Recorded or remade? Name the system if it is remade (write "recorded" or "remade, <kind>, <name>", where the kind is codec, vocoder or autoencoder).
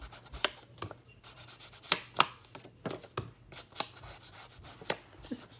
recorded